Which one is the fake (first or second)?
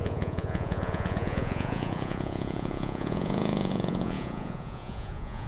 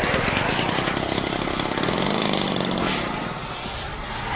first